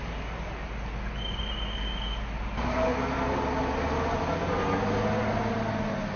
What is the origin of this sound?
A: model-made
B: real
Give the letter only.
B